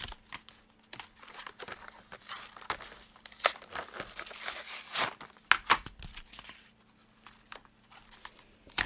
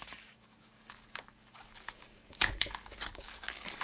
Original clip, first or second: first